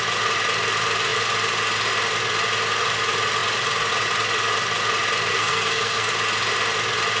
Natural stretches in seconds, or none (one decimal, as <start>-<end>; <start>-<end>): 0.0-5.3; 6.1-7.2